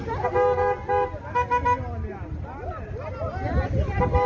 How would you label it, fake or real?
real